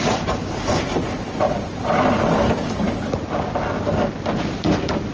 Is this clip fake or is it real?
real